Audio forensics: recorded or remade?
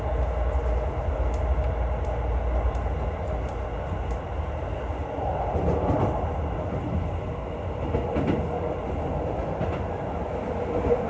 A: recorded